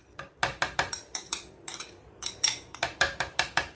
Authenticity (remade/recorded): remade